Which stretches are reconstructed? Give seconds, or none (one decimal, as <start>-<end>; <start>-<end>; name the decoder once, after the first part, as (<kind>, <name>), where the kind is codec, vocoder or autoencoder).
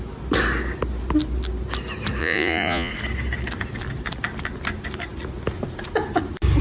2.2-2.9 (vocoder, Vocos)